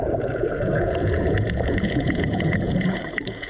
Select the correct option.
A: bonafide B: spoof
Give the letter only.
B